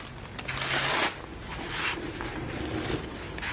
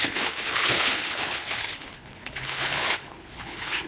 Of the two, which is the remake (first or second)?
second